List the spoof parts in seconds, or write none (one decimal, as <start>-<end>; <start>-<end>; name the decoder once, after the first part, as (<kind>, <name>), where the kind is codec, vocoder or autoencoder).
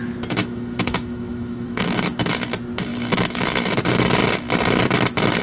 0.4-2.3 (autoencoder, DAC-VAE); 2.9-3.8